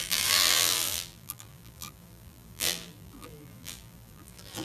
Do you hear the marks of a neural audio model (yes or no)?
yes